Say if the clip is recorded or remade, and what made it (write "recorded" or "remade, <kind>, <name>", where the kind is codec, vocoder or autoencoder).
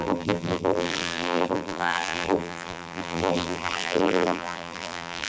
remade, vocoder, BigVGAN v2